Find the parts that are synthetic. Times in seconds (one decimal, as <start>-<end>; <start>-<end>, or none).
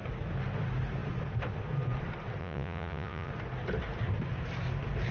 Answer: 2.4-3.3